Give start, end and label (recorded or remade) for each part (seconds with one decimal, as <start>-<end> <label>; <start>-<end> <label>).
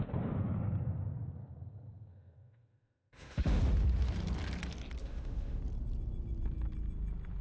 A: 0.0-2.1 recorded; 2.1-3.6 remade; 3.6-5.0 recorded; 5.0-5.6 remade; 5.6-7.4 recorded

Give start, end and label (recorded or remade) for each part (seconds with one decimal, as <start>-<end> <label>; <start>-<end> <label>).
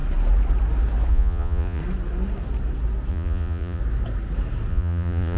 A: 0.0-1.1 recorded; 1.1-1.8 remade; 1.8-3.1 recorded; 3.1-3.8 remade; 3.8-4.7 recorded; 4.7-5.4 remade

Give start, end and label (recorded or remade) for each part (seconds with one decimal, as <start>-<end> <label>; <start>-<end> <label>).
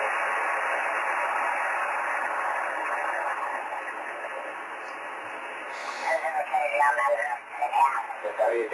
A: 0.0-5.8 recorded; 5.8-6.8 remade; 6.8-8.7 recorded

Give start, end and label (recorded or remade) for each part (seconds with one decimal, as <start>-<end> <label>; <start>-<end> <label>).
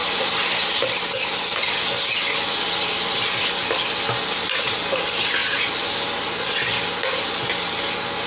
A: 0.0-8.3 recorded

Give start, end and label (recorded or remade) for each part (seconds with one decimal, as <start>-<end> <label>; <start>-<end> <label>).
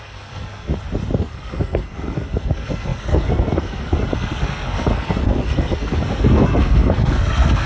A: 0.0-0.7 remade; 0.7-1.2 recorded; 1.2-7.7 remade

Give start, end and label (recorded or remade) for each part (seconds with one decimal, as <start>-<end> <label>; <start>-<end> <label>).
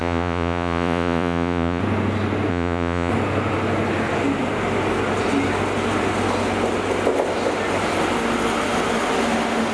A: 0.0-1.8 remade; 1.8-2.5 recorded; 2.5-3.1 remade; 3.1-9.7 recorded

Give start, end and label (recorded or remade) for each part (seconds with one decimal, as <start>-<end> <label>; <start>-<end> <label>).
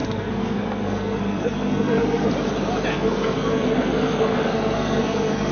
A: 0.0-2.3 remade; 2.3-2.9 recorded; 2.9-5.5 remade